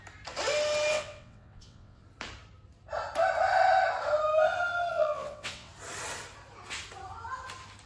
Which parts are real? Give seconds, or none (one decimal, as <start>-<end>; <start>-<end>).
0.0-0.9; 2.0-4.9; 5.7-7.9